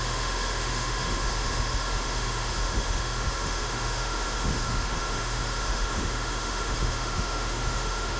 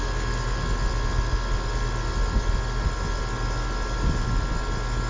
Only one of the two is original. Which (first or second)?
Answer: second